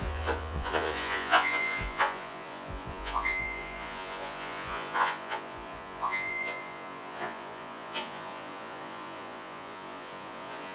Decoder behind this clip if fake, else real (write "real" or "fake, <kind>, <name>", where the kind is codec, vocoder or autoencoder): fake, vocoder, Vocos